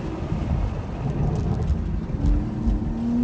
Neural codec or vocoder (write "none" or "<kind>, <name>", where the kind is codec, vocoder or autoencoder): none